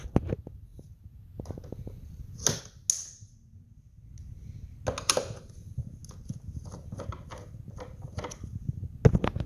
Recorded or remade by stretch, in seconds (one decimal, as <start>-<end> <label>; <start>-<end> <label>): 0.0-9.5 recorded